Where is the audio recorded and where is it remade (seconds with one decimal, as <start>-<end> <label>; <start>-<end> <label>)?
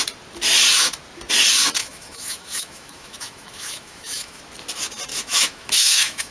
0.0-1.8 recorded; 1.8-4.4 remade; 4.4-5.1 recorded; 5.1-6.3 remade